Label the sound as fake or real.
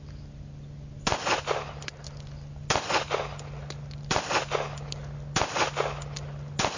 real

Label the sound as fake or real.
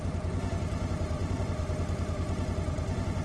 real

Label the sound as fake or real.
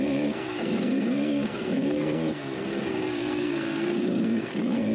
fake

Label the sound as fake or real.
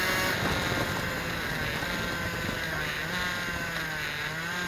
real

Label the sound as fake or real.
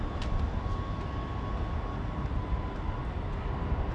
real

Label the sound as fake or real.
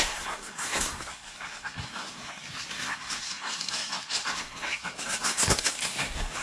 fake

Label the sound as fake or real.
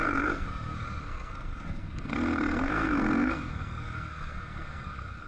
fake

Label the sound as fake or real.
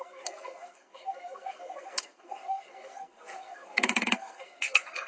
fake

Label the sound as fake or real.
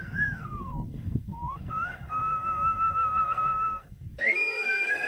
fake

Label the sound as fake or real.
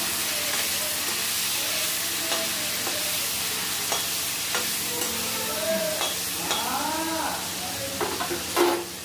real